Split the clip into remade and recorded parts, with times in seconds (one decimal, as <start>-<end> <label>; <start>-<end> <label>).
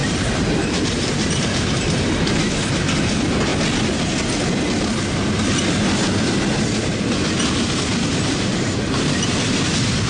0.0-2.4 remade; 2.4-8.5 recorded; 8.5-9.3 remade; 9.3-10.1 recorded